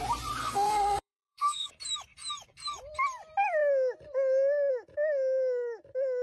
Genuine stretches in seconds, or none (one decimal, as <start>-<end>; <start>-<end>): 0.0-0.4; 1.7-6.2